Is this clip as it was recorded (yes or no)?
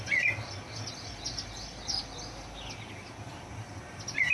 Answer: yes